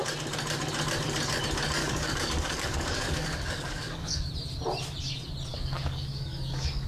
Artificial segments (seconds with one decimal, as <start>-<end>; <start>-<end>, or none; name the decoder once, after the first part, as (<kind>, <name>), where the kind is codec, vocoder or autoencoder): 1.8-4.3 (codec, DAC); 5.5-6.9

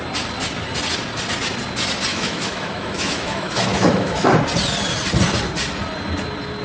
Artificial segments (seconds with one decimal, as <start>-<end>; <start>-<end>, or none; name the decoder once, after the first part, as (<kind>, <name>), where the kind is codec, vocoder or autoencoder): 2.1-4.3 (autoencoder, DAC-VAE)

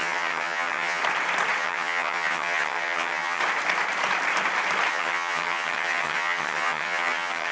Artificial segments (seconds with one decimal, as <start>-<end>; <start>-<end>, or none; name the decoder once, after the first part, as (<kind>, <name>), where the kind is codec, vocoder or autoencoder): 0.0-1.0 (vocoder, HiFi-GAN); 1.6-3.4; 4.9-7.5

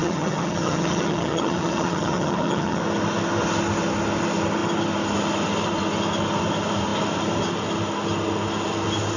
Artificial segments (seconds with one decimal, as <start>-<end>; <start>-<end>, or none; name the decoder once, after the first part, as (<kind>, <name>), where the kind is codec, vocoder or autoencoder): 0.0-2.8 (vocoder, HiFi-GAN)